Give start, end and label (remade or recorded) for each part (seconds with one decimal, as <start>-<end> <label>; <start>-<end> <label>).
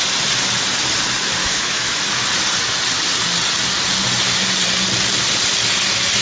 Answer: 0.0-1.4 recorded; 1.4-2.0 remade; 2.0-6.2 recorded